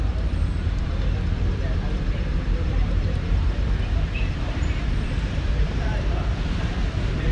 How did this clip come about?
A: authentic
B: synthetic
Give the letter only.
B